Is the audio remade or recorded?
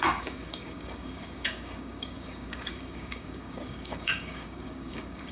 remade